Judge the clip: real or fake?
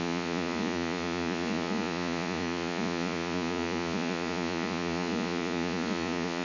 fake